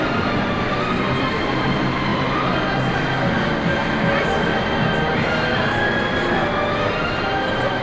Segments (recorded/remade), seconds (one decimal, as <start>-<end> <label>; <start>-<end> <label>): 0.0-7.8 recorded